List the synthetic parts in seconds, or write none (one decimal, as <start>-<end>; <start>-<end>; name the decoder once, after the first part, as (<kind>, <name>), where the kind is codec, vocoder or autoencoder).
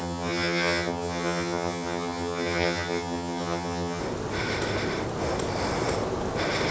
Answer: 0.0-4.0 (vocoder, HiFi-GAN)